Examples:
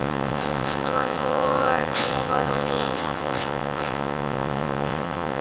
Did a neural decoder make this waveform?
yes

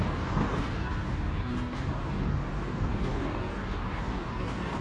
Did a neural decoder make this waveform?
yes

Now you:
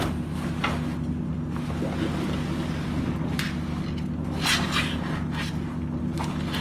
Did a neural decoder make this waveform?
no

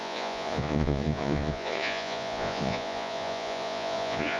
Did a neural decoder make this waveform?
yes